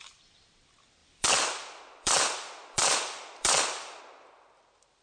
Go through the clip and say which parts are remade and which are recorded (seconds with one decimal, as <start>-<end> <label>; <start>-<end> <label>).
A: 0.0-1.0 recorded; 1.0-4.0 remade; 4.0-5.0 recorded